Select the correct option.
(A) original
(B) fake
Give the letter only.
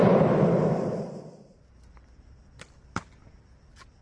B